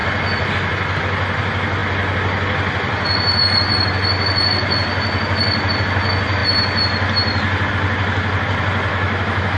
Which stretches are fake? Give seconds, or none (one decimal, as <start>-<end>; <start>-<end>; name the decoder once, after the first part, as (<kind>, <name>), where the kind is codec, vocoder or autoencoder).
8.9-9.6 (autoencoder, DAC-VAE)

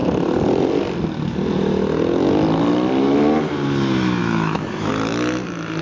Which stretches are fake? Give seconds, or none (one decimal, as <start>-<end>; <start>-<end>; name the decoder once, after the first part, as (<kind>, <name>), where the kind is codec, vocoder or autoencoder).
4.2-4.9 (autoencoder, DAC-VAE)